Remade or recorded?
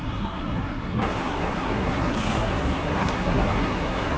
remade